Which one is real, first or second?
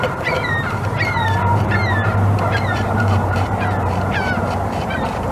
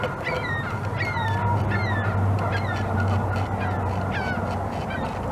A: second